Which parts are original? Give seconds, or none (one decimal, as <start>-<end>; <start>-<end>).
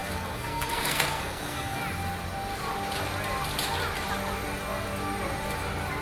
1.8-6.0